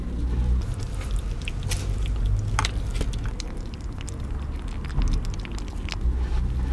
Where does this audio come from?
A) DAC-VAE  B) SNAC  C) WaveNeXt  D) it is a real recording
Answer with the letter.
D